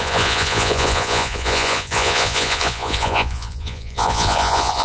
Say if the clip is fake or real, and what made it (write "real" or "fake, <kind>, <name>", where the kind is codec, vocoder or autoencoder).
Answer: fake, vocoder, Vocos